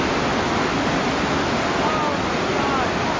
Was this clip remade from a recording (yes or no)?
no